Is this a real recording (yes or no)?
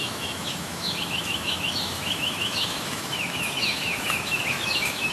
no